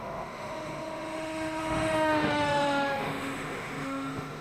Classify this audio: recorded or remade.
remade